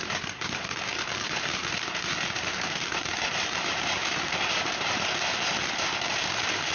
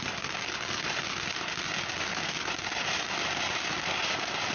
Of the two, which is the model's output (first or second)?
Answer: first